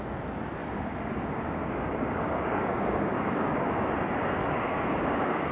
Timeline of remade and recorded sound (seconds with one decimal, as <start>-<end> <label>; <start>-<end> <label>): 0.0-0.6 recorded; 0.6-3.9 remade; 3.9-4.4 recorded; 4.4-5.5 remade